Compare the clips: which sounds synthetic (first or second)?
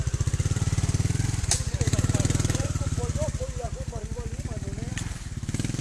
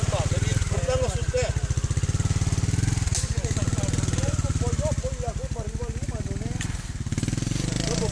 first